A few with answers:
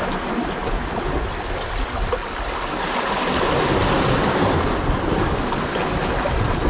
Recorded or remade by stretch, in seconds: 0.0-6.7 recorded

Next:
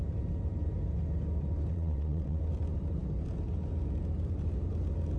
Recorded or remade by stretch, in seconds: 0.0-1.7 recorded; 1.7-2.4 remade; 2.4-5.2 recorded

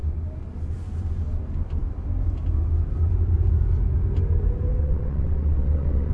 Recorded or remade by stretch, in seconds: 0.0-4.8 recorded; 4.8-6.1 remade

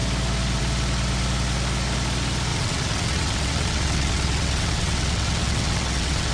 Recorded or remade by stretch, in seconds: 0.0-2.5 recorded; 2.5-6.3 remade

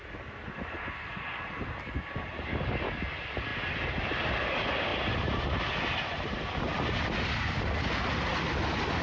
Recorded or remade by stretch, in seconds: 0.0-9.0 recorded